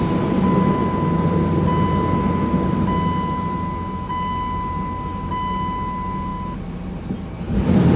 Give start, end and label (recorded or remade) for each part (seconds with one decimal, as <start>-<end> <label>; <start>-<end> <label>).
0.0-8.0 recorded